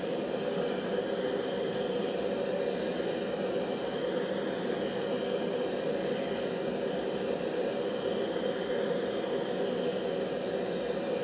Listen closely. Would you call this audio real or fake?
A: real